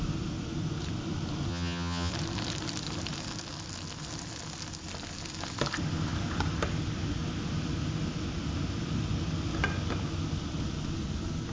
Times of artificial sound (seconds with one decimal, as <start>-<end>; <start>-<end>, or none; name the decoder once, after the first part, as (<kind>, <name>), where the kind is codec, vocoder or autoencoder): 1.5-2.1 (vocoder, HiFi-GAN)